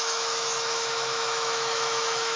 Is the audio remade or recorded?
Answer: remade